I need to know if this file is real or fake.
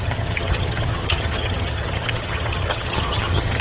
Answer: fake